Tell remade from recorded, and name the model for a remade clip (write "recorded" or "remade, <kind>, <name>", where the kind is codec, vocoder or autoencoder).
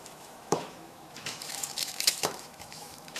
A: remade, autoencoder, DAC-VAE